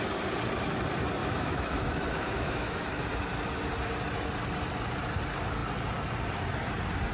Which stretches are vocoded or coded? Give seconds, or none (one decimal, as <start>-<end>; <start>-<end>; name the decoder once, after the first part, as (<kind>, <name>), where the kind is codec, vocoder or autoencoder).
1.2-2.9 (autoencoder, DAC-VAE)